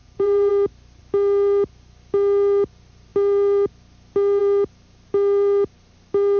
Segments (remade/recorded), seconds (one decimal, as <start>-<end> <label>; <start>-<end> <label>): 0.0-0.5 remade; 0.5-6.4 recorded